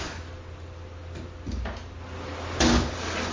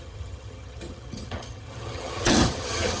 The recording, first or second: first